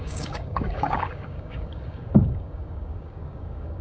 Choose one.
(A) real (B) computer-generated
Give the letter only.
B